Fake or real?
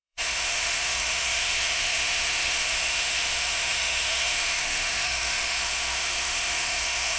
fake